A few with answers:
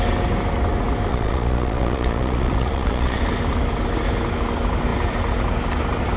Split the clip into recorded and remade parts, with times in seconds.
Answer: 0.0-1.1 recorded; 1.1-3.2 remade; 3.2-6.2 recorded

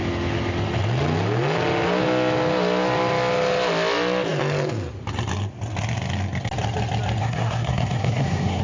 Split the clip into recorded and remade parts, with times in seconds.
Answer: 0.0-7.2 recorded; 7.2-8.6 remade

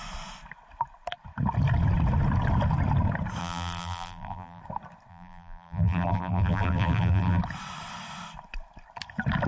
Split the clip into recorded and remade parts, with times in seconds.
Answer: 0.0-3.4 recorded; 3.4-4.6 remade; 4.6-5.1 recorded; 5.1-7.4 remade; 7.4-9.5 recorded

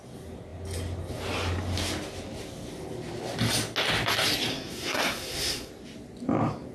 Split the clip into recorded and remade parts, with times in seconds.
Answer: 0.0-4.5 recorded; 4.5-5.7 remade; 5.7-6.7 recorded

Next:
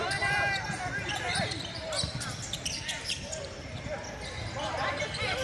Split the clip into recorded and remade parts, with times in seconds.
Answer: 0.0-3.2 remade; 3.2-5.4 recorded